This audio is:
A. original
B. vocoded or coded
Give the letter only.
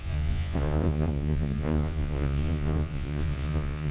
B